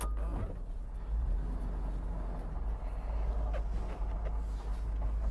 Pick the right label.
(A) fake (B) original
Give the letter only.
B